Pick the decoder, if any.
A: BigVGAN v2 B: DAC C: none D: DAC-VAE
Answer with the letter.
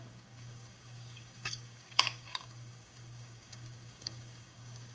B